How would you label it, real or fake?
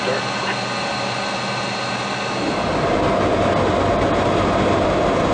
real